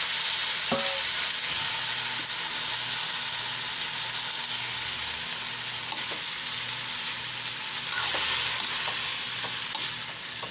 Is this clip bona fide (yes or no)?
yes